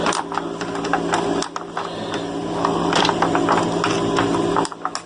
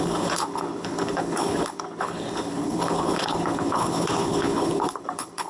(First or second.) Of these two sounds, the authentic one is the first